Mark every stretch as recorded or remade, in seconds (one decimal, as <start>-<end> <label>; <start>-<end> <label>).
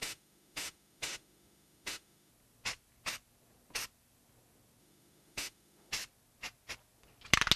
0.0-2.3 remade; 2.3-4.8 recorded; 4.8-5.9 remade; 5.9-7.6 recorded